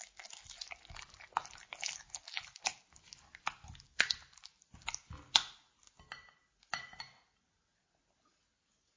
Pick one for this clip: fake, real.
real